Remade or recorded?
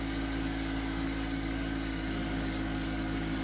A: remade